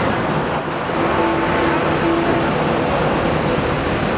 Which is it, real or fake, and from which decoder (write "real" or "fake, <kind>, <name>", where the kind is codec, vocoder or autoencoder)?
real